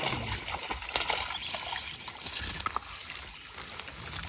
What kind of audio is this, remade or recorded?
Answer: recorded